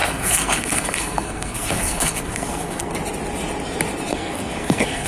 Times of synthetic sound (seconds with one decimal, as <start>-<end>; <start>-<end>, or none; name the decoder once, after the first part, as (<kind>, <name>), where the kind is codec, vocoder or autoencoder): 0.0-2.9 (codec, SNAC); 4.1-5.1

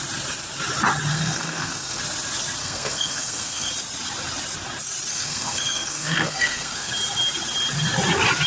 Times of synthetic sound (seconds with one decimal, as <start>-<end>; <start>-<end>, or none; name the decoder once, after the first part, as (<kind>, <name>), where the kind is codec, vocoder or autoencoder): 1.1-2.0 (codec, SNAC); 2.6-3.7; 5.1-6.9